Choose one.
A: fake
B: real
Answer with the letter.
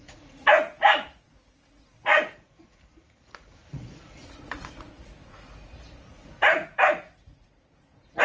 A